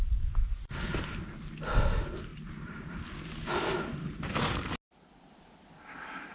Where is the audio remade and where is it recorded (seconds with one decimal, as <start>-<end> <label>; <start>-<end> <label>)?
0.0-2.3 recorded; 2.3-4.7 remade; 4.7-6.3 recorded